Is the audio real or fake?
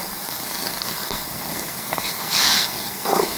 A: fake